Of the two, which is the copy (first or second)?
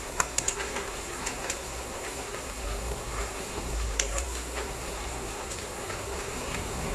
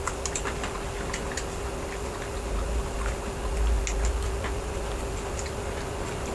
first